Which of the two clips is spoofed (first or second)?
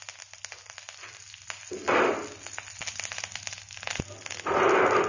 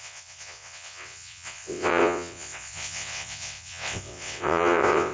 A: second